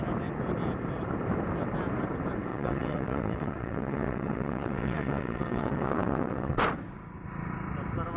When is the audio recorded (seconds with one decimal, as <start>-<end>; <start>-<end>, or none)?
0.0-2.5; 6.6-8.2